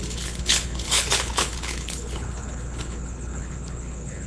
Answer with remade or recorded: remade